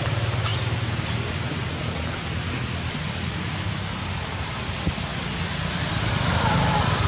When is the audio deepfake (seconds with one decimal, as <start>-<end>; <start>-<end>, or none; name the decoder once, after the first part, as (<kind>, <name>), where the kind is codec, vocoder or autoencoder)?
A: 0.0-0.5 (vocoder, BigVGAN v2); 2.9-5.1; 6.0-7.1